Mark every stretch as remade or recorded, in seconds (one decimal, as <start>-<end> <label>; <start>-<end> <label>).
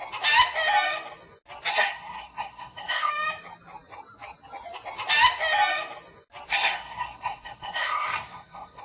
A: 0.0-1.7 recorded; 1.7-3.1 remade; 3.1-6.5 recorded; 6.5-8.8 remade